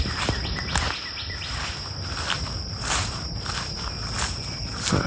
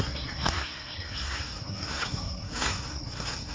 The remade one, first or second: second